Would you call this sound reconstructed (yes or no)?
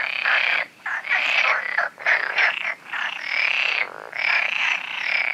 yes